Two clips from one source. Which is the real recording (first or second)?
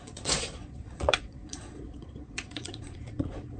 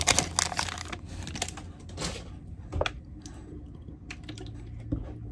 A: second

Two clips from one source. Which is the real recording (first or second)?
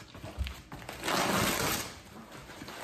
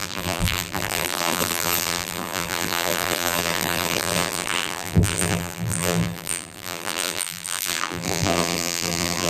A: first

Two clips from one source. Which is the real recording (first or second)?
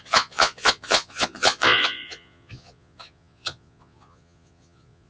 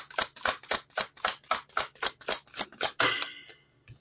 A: second